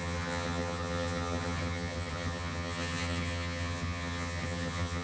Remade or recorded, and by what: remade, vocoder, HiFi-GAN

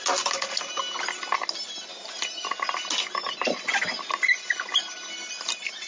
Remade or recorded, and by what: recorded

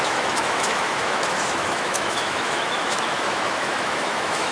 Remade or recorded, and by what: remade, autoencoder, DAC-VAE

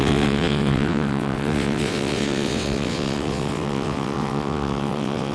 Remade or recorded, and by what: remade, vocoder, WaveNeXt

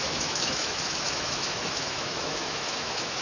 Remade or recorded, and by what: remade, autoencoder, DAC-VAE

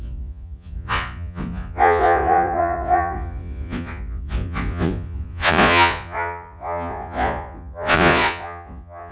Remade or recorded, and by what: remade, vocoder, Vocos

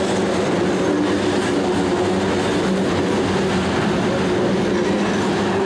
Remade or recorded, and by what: recorded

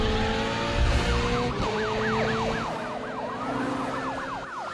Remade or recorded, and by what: recorded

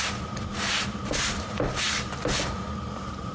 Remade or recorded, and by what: remade, vocoder, BigVGAN v2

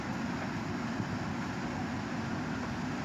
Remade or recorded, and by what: recorded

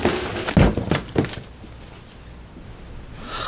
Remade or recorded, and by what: recorded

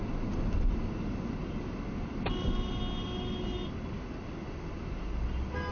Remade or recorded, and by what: recorded